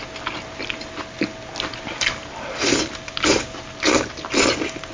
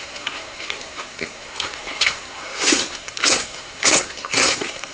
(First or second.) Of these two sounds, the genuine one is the first